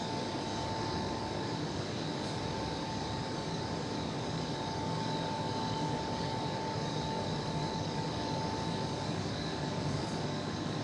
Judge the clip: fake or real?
fake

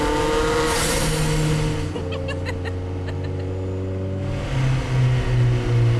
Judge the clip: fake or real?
real